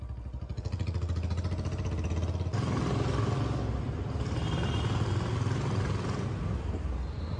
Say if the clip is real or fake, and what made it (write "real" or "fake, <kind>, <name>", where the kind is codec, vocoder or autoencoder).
real